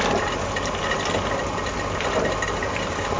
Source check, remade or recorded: recorded